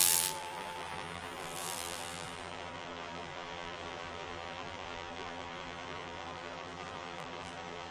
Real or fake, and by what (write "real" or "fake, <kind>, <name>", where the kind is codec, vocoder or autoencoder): fake, vocoder, BigVGAN v2